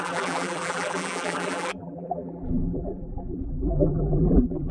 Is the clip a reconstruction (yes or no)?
yes